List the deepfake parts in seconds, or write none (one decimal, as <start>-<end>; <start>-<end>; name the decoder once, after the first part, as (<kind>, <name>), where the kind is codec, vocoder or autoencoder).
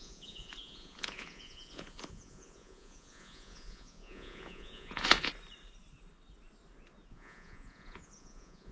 0.0-5.3 (vocoder, Vocos); 7.1-8.7